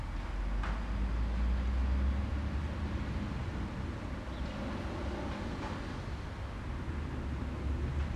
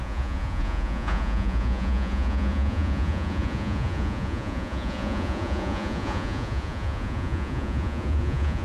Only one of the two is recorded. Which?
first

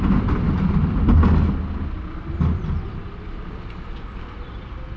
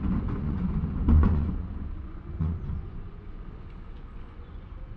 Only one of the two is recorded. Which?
first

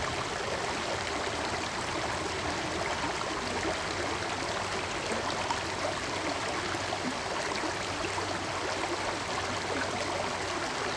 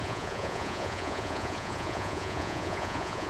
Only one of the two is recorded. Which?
first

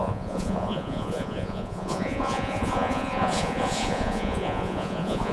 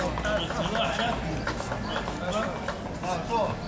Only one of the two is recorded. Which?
second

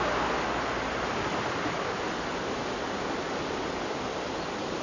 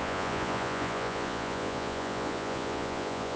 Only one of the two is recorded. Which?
first